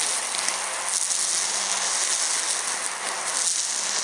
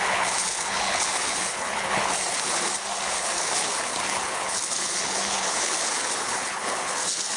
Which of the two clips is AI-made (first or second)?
second